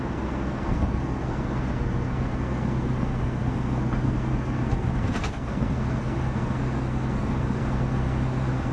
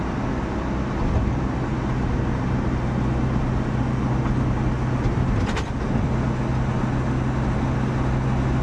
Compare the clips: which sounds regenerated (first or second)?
first